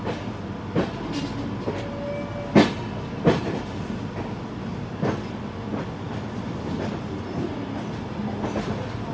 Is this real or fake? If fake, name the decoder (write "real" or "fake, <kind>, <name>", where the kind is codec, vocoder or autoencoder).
real